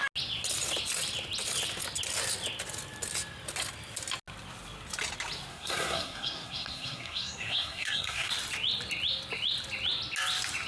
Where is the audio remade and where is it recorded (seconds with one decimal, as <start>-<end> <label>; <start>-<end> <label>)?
0.0-5.5 recorded; 5.5-8.3 remade; 8.3-10.7 recorded